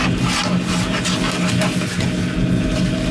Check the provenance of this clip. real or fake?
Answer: real